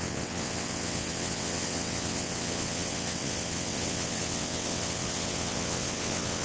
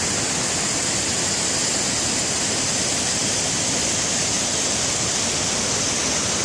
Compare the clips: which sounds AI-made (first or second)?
first